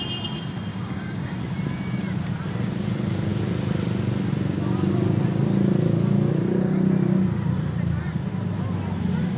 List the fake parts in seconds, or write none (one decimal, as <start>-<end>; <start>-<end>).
0.7-1.4